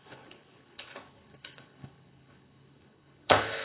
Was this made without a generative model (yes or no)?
no